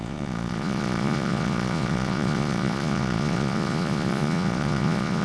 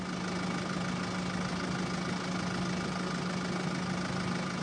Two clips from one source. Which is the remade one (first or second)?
first